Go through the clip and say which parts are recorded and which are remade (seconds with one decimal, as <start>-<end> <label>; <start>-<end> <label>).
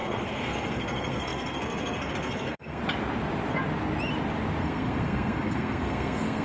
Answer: 0.0-2.8 remade; 2.8-4.6 recorded; 4.6-6.4 remade